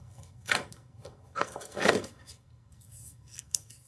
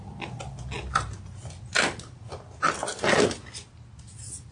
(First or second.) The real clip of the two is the second